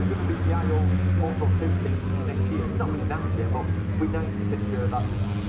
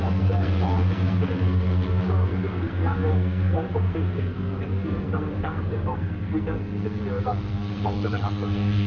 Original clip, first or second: first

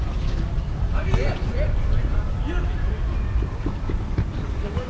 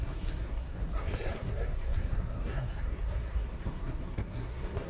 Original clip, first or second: first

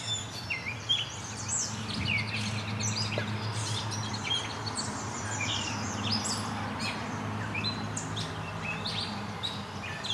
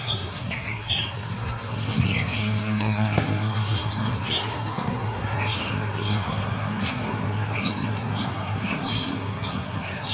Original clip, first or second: first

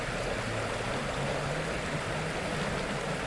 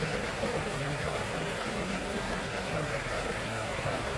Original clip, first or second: first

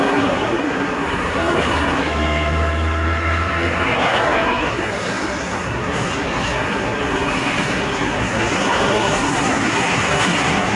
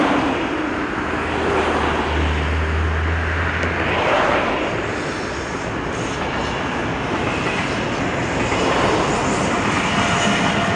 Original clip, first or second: second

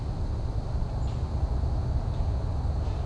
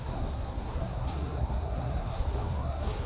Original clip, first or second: first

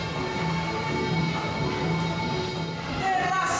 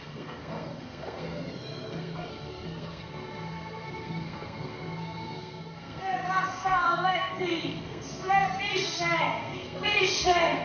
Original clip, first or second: first